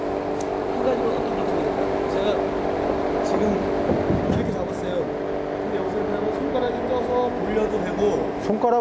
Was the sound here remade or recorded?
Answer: recorded